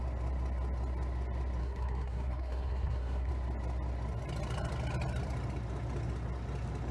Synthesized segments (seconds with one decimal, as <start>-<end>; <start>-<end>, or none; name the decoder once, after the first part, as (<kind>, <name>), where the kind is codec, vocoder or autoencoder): 1.6-3.3 (codec, SNAC)